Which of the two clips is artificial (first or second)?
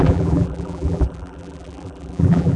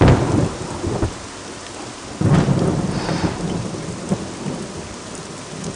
first